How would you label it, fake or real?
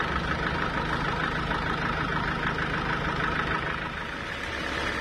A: real